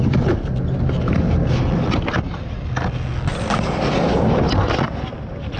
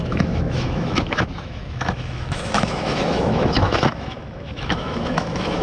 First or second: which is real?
first